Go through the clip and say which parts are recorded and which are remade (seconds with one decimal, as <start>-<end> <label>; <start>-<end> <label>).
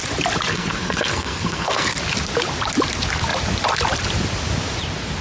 0.0-0.5 recorded; 0.5-1.9 remade; 1.9-5.2 recorded